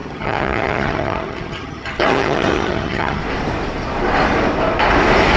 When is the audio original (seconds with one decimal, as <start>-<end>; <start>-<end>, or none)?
3.2-5.4